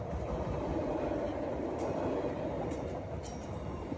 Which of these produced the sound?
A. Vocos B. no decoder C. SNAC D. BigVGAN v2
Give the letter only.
B